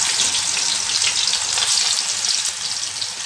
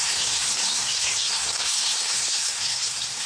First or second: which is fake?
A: second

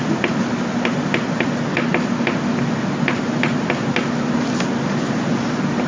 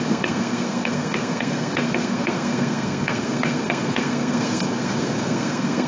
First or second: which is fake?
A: second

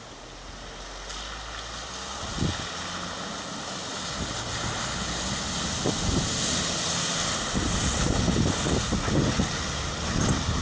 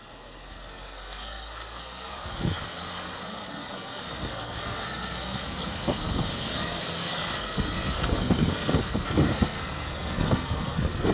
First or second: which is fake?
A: second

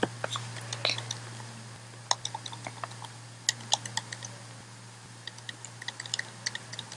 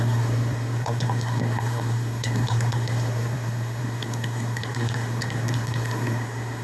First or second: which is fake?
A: second